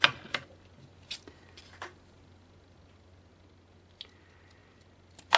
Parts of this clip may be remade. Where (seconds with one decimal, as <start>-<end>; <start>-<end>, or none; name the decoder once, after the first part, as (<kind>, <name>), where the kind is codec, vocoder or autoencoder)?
none